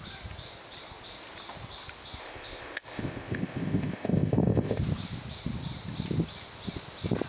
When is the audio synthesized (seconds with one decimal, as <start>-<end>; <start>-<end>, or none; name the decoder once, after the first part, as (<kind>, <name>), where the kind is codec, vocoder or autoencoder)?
2.2-4.8 (codec, ZipCodec)